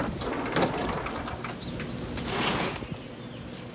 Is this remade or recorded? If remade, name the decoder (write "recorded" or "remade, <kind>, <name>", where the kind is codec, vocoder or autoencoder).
recorded